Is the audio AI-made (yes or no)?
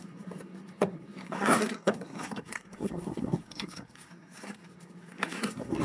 yes